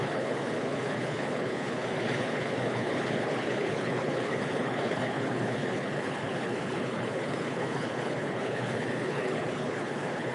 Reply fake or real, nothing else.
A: fake